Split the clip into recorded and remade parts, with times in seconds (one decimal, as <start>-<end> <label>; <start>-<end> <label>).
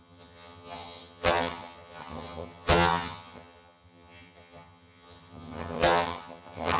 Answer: 0.0-6.8 remade